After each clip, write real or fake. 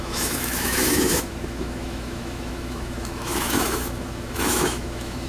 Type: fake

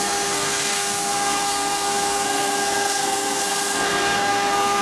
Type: fake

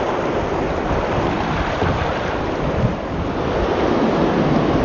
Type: real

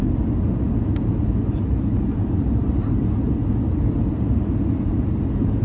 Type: real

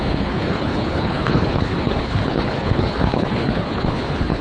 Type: fake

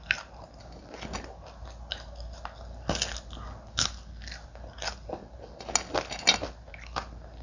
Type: real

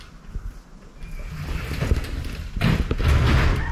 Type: real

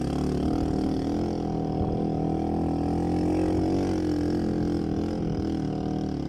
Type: real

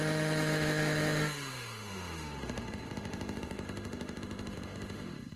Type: fake